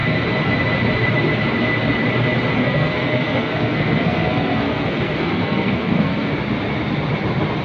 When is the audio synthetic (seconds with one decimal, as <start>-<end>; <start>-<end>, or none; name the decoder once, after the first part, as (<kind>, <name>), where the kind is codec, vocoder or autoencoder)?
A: 2.6-6.3 (codec, SNAC)